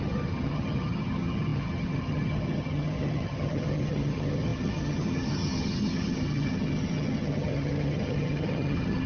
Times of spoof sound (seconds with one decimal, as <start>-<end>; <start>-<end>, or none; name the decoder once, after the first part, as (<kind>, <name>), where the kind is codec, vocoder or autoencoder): 0.0-9.1 (vocoder, HiFi-GAN)

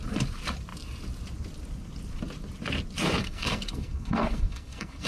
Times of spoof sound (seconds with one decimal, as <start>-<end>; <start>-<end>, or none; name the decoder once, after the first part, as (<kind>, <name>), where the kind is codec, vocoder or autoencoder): 3.2-5.1 (codec, SNAC)

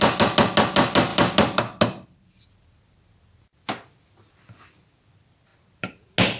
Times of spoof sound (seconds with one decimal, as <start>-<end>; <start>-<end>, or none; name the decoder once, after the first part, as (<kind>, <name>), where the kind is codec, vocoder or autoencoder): none

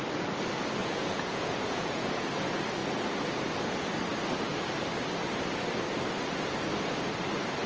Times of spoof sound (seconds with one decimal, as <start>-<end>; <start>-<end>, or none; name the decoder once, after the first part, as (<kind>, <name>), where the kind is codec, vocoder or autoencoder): 0.8-2.3 (vocoder, Vocos)

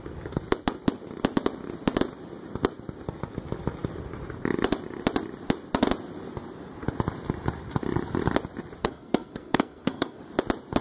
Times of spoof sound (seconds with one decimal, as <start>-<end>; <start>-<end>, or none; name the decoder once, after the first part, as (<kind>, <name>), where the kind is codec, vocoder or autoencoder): 8.8-10.2 (codec, SNAC)

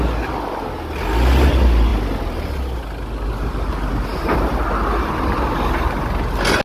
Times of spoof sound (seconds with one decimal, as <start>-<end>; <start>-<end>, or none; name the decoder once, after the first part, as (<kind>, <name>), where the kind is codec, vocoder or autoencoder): none

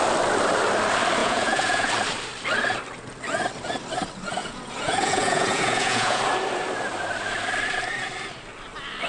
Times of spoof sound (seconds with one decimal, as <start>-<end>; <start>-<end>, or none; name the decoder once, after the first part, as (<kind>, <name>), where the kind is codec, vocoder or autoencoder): 1.2-1.9 (vocoder, Vocos); 4.4-6.2